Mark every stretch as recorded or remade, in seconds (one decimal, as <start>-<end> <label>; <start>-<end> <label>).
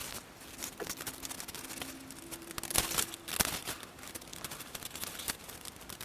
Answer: 0.0-3.6 recorded; 3.6-4.3 remade; 4.3-5.3 recorded; 5.3-6.0 remade